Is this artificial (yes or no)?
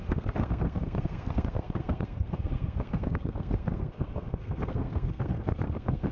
yes